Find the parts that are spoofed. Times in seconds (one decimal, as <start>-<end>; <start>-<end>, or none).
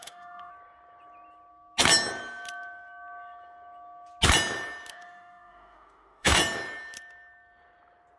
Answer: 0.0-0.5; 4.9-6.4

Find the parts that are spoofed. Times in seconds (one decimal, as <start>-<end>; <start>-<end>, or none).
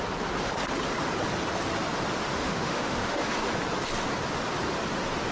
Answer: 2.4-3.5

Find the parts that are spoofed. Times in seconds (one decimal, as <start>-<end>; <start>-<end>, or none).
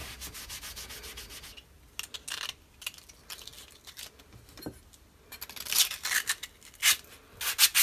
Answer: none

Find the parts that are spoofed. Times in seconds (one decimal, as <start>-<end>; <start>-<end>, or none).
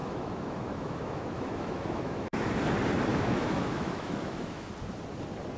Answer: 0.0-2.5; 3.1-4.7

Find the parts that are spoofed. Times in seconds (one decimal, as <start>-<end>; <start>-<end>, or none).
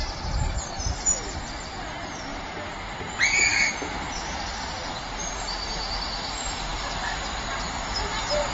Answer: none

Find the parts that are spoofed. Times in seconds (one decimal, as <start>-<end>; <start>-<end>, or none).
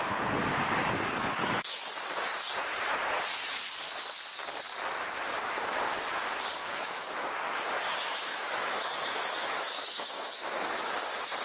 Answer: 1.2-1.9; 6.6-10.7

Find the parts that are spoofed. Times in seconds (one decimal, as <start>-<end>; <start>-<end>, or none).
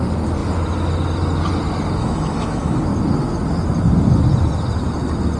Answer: 2.0-2.8